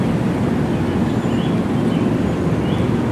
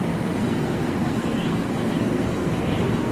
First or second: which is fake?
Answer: second